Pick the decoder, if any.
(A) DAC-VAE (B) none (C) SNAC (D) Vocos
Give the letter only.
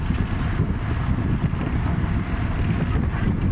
B